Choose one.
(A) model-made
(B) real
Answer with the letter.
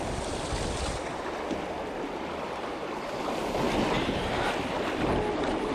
B